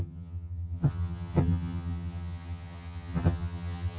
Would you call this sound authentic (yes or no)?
no